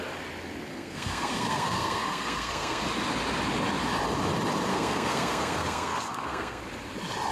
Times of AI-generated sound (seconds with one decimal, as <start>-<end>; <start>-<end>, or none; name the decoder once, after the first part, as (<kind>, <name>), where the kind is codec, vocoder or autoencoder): 0.7-2.8 (codec, SNAC); 4.7-6.6